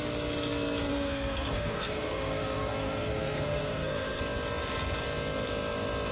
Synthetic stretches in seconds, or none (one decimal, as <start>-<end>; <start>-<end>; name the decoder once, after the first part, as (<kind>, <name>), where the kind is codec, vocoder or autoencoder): 0.9-4.2 (codec, SNAC)